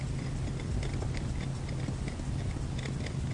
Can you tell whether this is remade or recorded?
recorded